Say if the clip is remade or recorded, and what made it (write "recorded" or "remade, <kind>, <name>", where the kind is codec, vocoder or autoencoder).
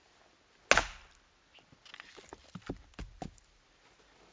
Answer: recorded